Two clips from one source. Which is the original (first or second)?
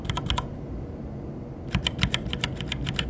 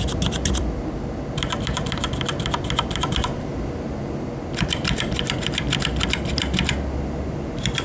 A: first